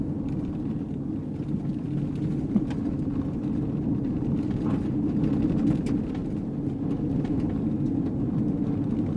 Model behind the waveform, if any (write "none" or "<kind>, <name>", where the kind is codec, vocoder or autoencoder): none